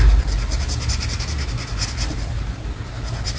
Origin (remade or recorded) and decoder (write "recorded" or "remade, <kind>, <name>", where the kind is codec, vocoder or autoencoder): recorded